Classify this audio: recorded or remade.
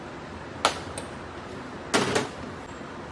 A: recorded